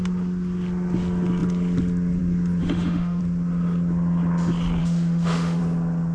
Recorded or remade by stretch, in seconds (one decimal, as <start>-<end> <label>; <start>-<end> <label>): 0.0-2.6 recorded; 2.6-3.2 remade; 3.2-4.8 recorded; 4.8-5.6 remade; 5.6-6.1 recorded